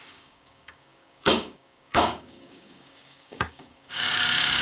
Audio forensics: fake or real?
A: fake